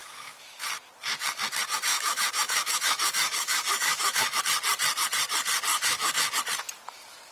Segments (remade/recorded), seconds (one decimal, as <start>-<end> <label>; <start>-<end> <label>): 0.0-0.6 remade; 0.6-1.9 recorded; 1.9-4.4 remade; 4.4-5.7 recorded; 5.7-6.4 remade; 6.4-7.3 recorded